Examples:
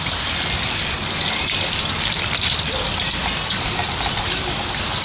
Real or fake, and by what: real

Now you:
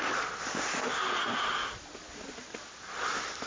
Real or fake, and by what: real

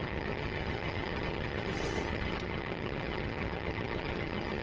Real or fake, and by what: fake, vocoder, HiFi-GAN